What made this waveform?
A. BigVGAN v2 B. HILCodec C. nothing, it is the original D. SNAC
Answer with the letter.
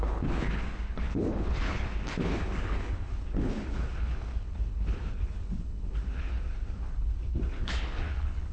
B